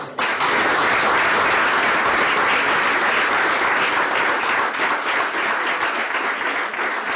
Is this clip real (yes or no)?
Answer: yes